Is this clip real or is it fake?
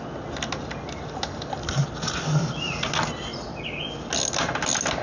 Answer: real